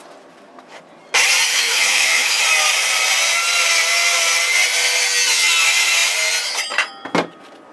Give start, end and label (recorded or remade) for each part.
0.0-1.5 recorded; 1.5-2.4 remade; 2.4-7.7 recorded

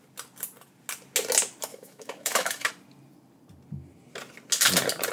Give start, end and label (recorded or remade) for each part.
0.0-1.7 recorded; 1.7-2.7 remade; 2.7-5.1 recorded

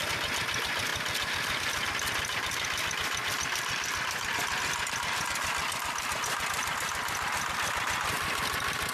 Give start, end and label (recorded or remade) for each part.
0.0-8.9 recorded

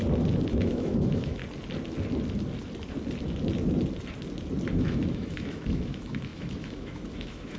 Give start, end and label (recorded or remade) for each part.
0.0-0.5 recorded; 0.5-1.4 remade; 1.4-4.7 recorded; 4.7-7.6 remade

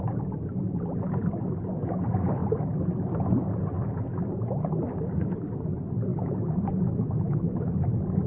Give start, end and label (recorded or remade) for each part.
0.0-6.1 recorded; 6.1-7.9 remade; 7.9-8.3 recorded

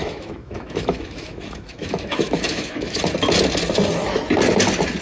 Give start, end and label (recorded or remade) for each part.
0.0-3.0 remade; 3.0-5.0 recorded